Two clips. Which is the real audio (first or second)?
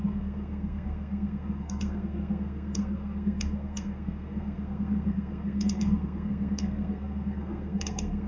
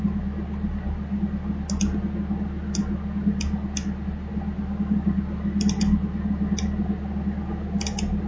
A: second